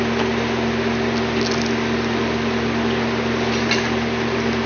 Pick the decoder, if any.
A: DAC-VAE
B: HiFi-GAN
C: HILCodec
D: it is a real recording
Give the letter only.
D